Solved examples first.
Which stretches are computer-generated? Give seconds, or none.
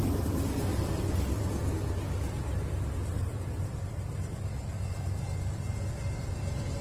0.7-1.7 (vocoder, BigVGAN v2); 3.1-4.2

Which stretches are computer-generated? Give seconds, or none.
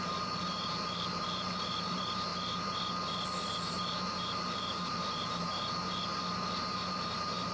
0.0-2.3 (vocoder, BigVGAN v2); 3.5-6.1; 6.9-7.5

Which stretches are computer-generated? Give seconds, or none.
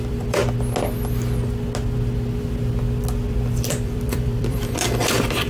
0.0-0.4 (vocoder, BigVGAN v2); 3.7-5.5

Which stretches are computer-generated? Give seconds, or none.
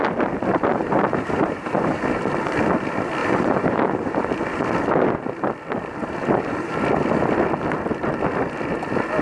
0.7-2.2 (vocoder, BigVGAN v2); 3.2-4.3; 6.0-6.7